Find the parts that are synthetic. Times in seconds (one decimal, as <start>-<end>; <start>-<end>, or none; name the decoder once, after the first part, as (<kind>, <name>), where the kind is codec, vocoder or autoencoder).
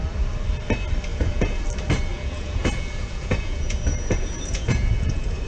1.1-1.6 (vocoder, Vocos); 2.1-5.5